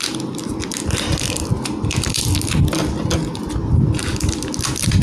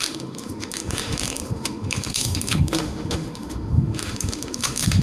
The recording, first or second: first